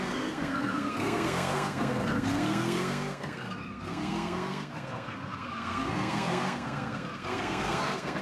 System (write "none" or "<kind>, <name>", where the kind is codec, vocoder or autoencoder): codec, SNAC